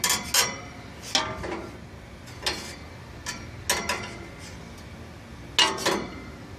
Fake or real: real